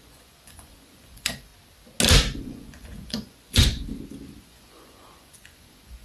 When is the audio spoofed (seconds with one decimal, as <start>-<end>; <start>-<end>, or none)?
0.0-1.5; 2.4-3.8; 4.4-6.0